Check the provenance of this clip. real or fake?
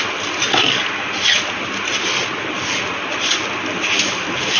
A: real